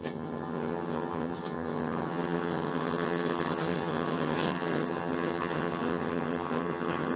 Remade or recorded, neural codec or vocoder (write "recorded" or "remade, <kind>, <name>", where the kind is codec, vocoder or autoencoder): remade, vocoder, HiFi-GAN